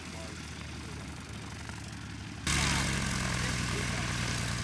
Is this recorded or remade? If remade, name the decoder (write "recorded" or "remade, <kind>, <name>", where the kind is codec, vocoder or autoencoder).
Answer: recorded